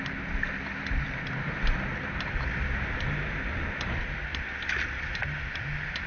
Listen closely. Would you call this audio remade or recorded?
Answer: recorded